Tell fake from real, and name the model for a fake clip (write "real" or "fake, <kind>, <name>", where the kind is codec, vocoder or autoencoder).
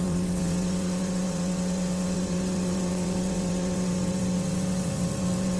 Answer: fake, vocoder, WaveNeXt